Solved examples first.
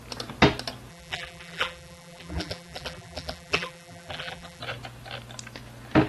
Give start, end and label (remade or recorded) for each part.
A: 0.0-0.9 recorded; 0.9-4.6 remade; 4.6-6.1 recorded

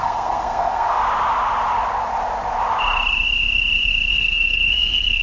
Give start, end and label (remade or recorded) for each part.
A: 0.0-1.0 remade; 1.0-4.1 recorded; 4.1-5.2 remade

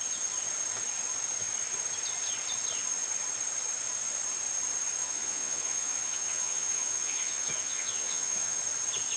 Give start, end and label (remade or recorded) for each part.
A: 0.0-5.0 recorded; 5.0-8.6 remade; 8.6-9.2 recorded